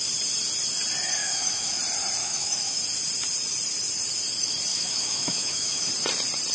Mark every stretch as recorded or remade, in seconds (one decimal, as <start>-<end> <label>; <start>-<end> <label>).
0.0-1.2 recorded; 1.2-1.8 remade; 1.8-2.2 recorded; 2.2-2.8 remade; 2.8-4.7 recorded; 4.7-5.9 remade; 5.9-6.5 recorded